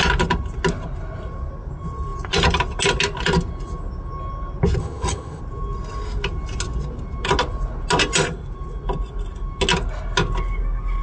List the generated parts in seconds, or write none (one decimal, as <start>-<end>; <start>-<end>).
4.8-5.4